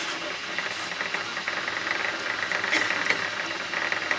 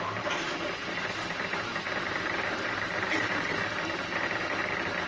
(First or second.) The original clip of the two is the first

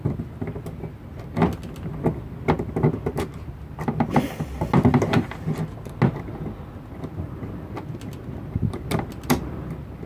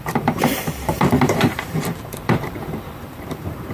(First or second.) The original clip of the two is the first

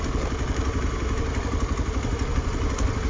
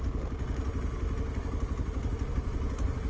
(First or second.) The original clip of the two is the second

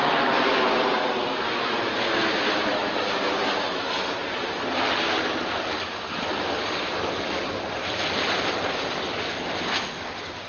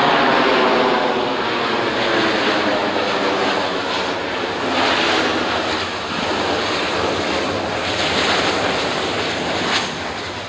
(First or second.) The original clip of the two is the second